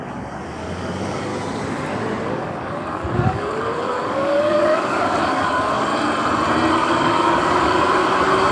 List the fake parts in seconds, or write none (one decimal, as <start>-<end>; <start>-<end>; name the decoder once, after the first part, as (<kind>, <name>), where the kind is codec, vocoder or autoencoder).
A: 0.0-1.3 (codec, DAC); 2.3-5.9; 6.7-8.5